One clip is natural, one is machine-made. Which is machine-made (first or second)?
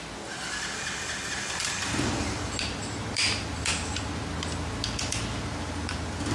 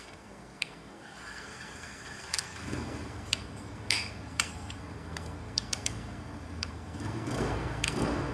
second